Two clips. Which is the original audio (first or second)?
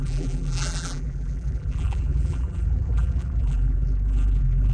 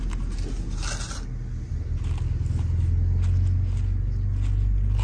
second